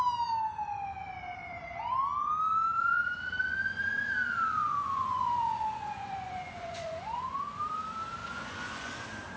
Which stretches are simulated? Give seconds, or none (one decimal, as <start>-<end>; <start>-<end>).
2.7-7.6; 8.2-8.9